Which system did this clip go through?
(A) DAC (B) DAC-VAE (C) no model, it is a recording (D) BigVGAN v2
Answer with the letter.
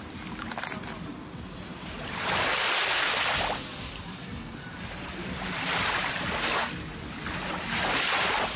C